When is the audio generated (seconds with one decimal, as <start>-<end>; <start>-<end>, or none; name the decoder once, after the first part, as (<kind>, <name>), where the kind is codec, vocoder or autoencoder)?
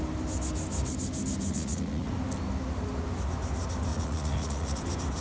1.5-2.1 (vocoder, Vocos); 3.9-4.8